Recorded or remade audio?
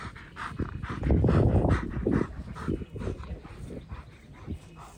recorded